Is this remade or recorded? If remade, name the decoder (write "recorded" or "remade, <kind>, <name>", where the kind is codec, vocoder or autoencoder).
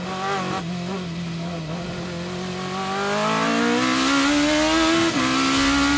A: recorded